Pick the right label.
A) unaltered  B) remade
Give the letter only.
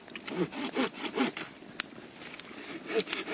B